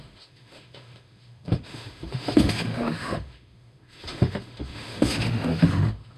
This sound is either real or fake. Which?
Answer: fake